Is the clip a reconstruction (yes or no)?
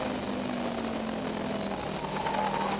no